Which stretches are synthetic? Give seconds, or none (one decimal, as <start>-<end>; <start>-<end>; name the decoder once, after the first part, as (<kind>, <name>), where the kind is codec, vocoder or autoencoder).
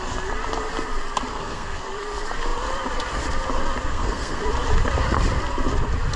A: 1.3-1.8 (codec, SNAC); 3.9-4.4